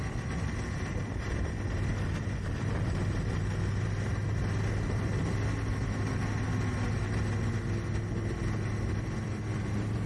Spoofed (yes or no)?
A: no